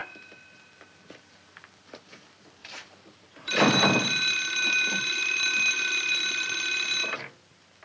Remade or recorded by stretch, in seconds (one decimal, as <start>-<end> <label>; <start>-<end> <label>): 0.0-2.6 recorded; 2.6-3.9 remade; 3.9-7.8 recorded